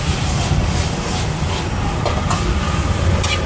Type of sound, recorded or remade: recorded